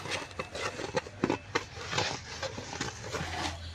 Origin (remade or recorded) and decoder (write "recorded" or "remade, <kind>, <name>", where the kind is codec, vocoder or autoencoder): recorded